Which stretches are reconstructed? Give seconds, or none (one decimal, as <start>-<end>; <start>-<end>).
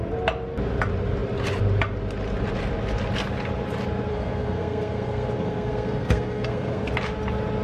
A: 4.1-6.9